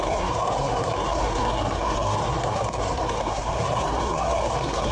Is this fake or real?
fake